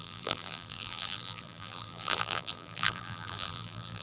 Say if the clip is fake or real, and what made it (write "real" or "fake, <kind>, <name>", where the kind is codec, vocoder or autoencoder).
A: fake, vocoder, BigVGAN v2